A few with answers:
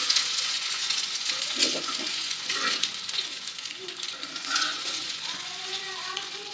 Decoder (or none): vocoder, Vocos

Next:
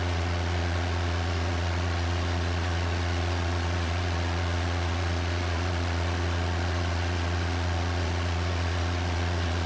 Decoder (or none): vocoder, Vocos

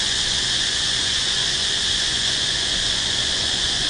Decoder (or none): vocoder, Vocos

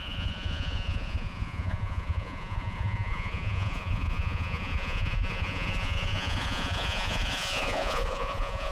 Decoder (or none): vocoder, Vocos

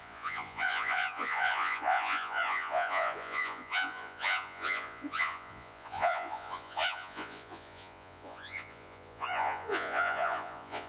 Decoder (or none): vocoder, Vocos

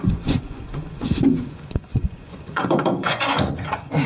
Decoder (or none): vocoder, Vocos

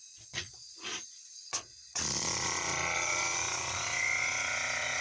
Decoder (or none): vocoder, Vocos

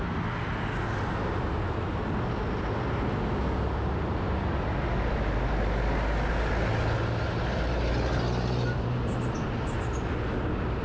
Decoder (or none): none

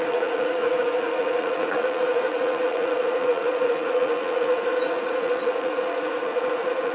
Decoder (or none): vocoder, Vocos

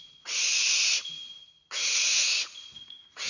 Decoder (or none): vocoder, Vocos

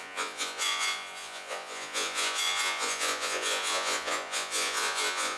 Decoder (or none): vocoder, Vocos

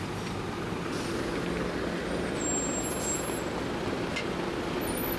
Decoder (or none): none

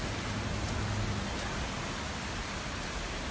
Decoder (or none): none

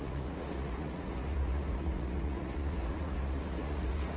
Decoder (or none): vocoder, Vocos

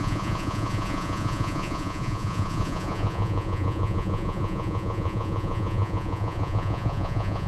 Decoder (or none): vocoder, Vocos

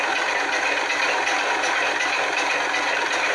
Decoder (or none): none